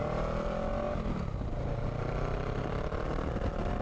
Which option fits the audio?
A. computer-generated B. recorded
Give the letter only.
B